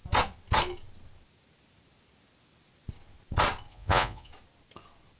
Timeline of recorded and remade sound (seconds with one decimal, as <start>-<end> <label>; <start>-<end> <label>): 0.0-3.7 recorded; 3.7-4.3 remade; 4.3-5.2 recorded